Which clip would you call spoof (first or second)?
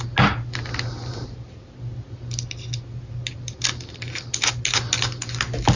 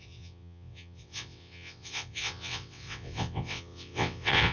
second